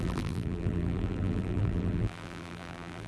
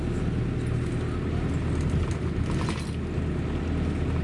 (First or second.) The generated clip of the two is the first